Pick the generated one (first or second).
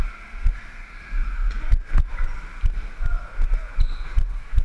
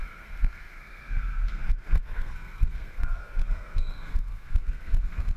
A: second